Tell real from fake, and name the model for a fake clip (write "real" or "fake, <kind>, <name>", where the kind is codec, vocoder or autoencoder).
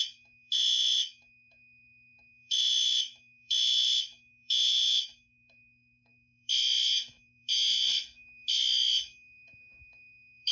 fake, autoencoder, DAC-VAE